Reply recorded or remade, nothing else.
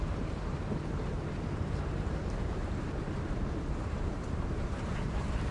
remade